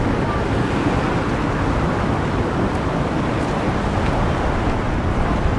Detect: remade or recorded recorded